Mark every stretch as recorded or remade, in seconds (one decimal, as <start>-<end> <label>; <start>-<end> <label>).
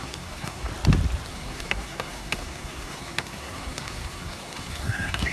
0.0-0.7 remade; 0.7-1.3 recorded; 1.3-5.3 remade